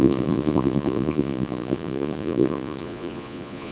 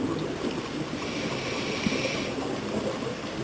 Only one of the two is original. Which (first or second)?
second